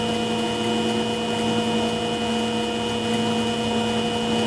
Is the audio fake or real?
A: real